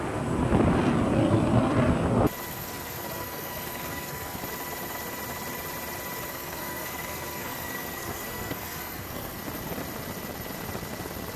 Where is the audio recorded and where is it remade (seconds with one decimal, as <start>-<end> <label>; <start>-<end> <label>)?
0.0-2.5 recorded; 2.5-4.4 remade; 4.4-6.3 recorded; 6.3-9.4 remade; 9.4-11.4 recorded